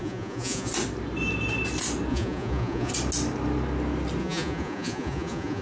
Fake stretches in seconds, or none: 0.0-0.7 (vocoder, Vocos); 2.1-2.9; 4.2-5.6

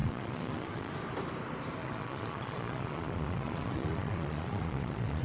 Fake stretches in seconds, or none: 0.0-0.9 (vocoder, Vocos); 1.8-5.2